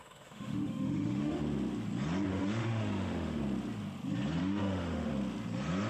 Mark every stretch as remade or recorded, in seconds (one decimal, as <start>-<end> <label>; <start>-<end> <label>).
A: 0.0-1.4 remade; 1.4-2.3 recorded; 2.3-3.4 remade; 3.4-4.4 recorded; 4.4-5.1 remade; 5.1-5.9 recorded